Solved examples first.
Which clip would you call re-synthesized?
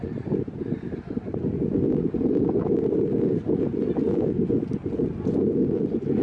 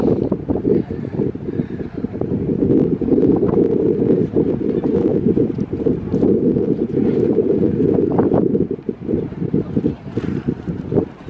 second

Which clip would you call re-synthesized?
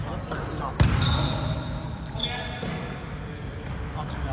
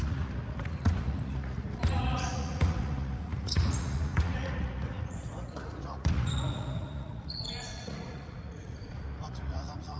second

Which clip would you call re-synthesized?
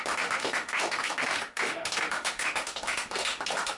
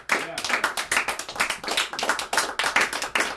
first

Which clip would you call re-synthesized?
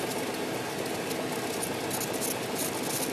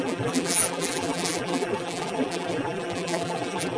second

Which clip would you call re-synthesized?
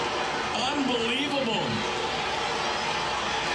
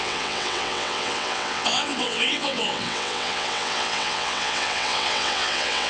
second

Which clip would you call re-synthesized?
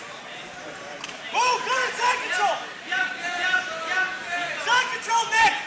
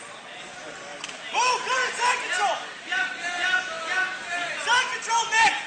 first